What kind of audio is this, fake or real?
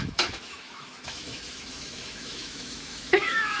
fake